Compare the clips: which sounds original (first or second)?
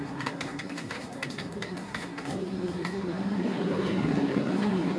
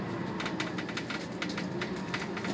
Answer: second